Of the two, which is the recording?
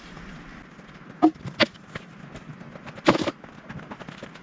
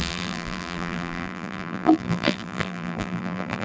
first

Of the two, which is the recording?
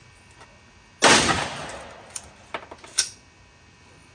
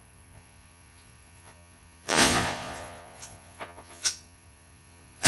first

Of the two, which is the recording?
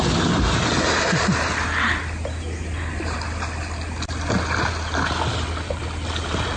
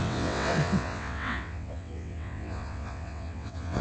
first